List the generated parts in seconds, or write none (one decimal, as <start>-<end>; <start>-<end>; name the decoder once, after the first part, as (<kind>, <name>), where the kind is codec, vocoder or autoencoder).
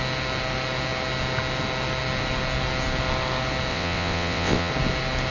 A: 3.7-4.7 (vocoder, WaveNeXt)